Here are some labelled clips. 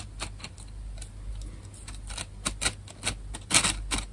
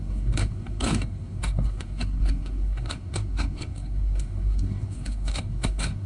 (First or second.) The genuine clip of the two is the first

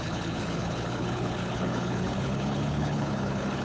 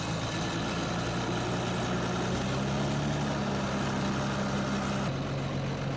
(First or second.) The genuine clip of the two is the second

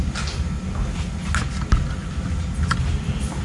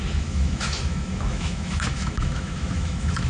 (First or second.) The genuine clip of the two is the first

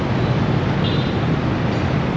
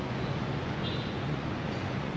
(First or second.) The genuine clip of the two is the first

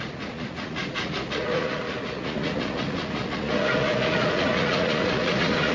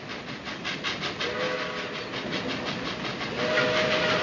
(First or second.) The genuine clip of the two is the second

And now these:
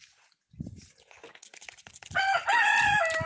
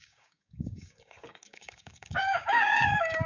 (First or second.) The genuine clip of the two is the first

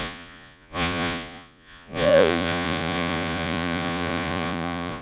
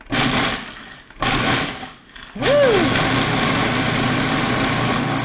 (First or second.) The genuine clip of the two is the second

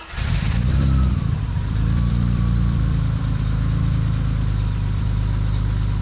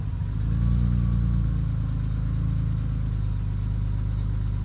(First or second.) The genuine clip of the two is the second